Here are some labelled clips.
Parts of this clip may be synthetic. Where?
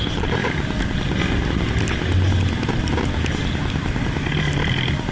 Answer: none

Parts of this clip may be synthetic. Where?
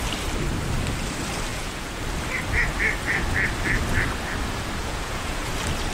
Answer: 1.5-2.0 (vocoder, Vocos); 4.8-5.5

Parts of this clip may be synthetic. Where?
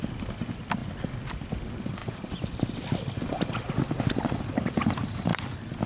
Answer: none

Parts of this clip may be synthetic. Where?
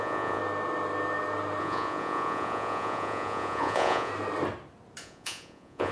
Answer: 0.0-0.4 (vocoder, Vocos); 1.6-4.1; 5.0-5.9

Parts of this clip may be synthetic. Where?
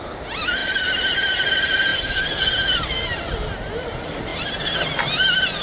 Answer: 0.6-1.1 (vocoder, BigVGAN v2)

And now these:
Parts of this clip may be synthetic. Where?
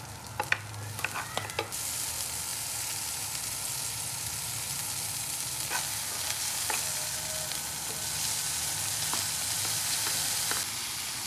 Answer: none